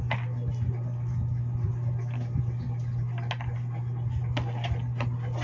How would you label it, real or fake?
real